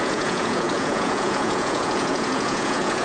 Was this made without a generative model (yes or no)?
no